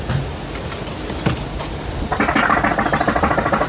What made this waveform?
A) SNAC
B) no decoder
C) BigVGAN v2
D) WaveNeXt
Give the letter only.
B